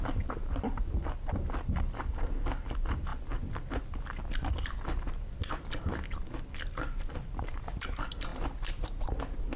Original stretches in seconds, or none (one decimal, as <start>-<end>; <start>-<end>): 0.0-9.6